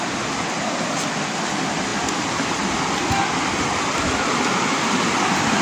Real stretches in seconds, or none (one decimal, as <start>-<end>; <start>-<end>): 0.0-5.6